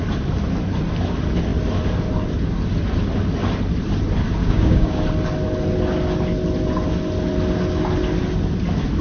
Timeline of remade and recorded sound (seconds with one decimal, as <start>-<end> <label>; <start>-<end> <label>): 0.0-4.4 recorded; 4.4-5.0 remade; 5.0-9.0 recorded